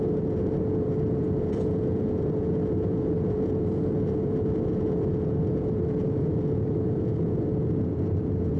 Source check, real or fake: fake